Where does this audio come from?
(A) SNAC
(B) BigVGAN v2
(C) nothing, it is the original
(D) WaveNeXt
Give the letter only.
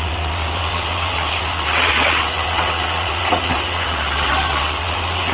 D